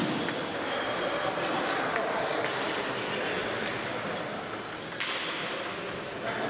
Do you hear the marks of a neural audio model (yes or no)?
no